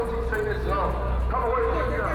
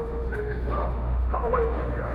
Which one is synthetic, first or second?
second